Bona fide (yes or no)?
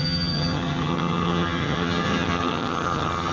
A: no